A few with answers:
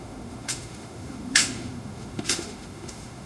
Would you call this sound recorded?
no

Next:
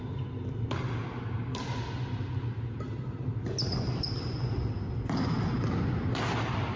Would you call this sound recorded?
yes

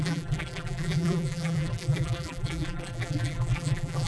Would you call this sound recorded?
no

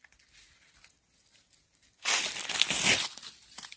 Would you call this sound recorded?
yes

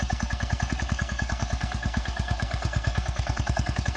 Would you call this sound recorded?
no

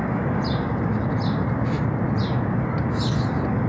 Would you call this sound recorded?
yes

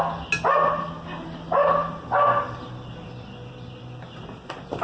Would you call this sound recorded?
yes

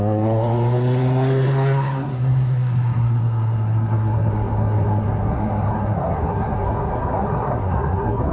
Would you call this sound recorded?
no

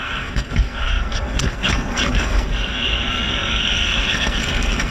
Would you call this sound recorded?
no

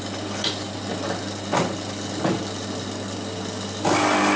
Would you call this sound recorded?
yes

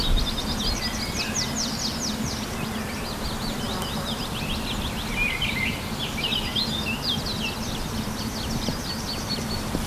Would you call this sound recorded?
yes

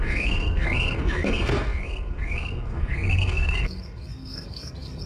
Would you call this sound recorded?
no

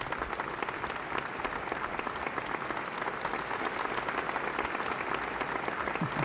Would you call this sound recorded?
yes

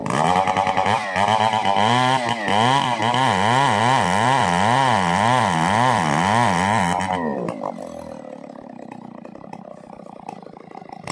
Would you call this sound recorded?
yes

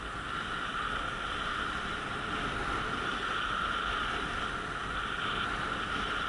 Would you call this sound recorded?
yes